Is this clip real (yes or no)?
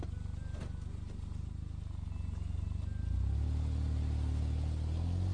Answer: yes